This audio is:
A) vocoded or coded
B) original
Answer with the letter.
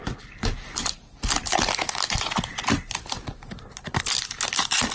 B